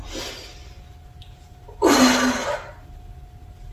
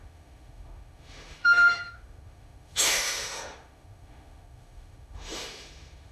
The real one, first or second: first